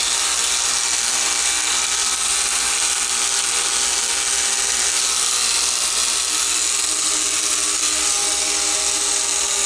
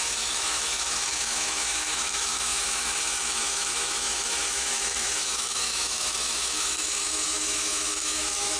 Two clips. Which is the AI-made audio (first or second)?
second